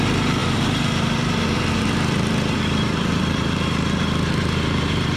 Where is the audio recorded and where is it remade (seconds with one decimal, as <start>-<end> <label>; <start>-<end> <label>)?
0.0-5.2 remade